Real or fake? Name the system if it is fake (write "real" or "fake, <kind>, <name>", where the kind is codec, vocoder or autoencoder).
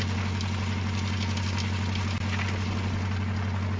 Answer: real